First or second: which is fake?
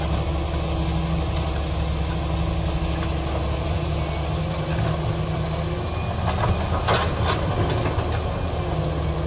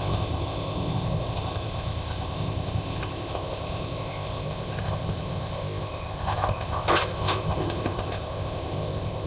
second